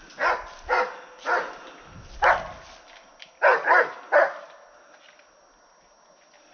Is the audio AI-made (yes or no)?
no